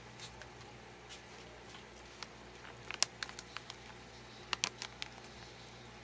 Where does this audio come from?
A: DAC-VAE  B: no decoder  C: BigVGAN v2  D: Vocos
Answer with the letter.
B